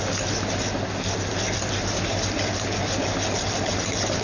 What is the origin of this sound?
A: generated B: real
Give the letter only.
B